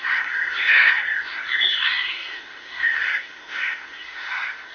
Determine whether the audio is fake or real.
fake